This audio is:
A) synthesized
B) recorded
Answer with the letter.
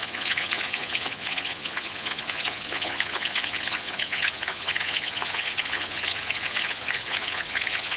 A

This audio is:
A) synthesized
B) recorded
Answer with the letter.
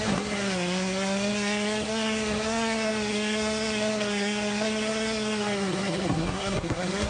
A